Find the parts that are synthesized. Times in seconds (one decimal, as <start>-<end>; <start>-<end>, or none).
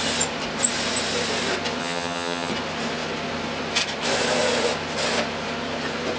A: 1.8-2.5